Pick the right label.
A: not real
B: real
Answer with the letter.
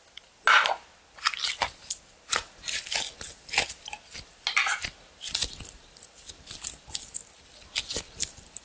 B